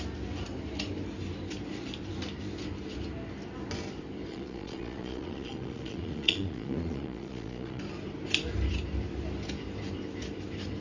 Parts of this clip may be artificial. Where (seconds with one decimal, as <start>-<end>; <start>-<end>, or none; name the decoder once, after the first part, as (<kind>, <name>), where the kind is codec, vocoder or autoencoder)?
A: 4.3-7.8 (vocoder, Vocos)